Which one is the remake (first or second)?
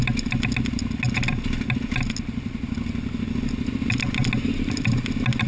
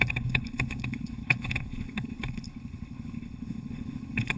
second